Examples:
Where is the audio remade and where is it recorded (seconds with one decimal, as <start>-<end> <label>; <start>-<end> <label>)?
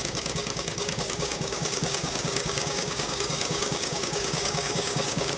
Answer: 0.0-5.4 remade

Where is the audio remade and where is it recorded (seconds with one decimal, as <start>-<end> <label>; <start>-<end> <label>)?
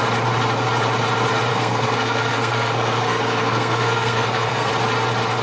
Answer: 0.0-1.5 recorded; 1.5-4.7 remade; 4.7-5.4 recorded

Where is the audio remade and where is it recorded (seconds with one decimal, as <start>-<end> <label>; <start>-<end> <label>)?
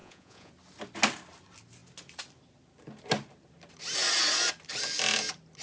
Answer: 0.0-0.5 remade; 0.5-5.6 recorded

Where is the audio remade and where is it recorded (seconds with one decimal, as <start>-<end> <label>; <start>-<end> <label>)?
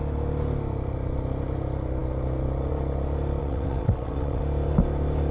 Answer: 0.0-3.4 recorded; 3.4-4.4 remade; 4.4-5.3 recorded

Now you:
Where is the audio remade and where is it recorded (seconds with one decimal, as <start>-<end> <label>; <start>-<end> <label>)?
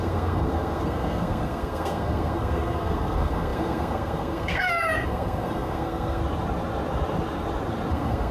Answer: 0.0-6.2 remade; 6.2-7.9 recorded; 7.9-8.3 remade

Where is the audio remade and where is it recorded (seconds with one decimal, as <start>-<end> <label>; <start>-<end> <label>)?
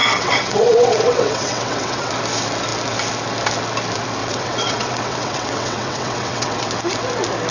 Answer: 0.0-2.1 remade; 2.1-4.2 recorded; 4.2-6.7 remade; 6.7-7.5 recorded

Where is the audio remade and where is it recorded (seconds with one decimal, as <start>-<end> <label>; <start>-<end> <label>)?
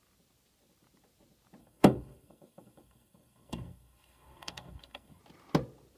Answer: 0.0-1.6 recorded; 1.6-5.2 remade; 5.2-6.0 recorded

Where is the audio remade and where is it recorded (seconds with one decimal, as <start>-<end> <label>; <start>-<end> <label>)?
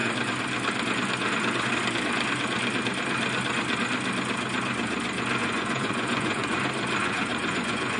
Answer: 0.0-5.4 recorded; 5.4-6.6 remade; 6.6-7.0 recorded; 7.0-8.0 remade